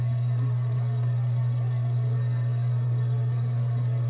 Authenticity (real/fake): fake